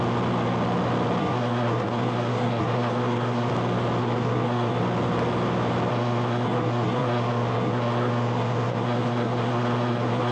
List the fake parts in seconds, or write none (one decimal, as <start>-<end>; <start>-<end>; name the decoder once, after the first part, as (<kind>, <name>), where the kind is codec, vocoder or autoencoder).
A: 1.2-3.5 (codec, SNAC); 4.0-4.8; 5.9-10.3